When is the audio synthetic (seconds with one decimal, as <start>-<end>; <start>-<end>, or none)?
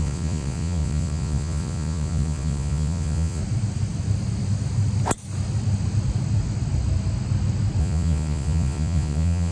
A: 0.0-3.4; 7.8-9.5